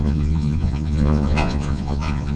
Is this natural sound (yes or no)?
no